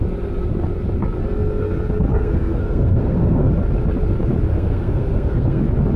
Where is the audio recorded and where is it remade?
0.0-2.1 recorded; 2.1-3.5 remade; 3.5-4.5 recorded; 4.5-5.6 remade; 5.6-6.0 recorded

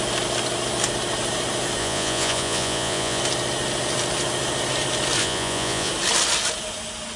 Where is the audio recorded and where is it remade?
0.0-1.8 recorded; 1.8-3.2 remade; 3.2-5.2 recorded; 5.2-5.9 remade; 5.9-7.2 recorded